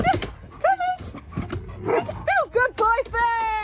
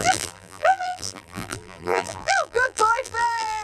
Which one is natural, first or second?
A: first